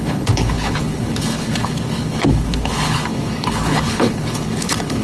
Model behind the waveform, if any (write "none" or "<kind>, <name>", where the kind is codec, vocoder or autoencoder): codec, HILCodec